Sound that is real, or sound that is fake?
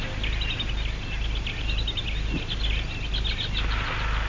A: real